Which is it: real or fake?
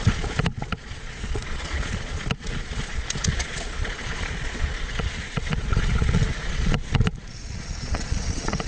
fake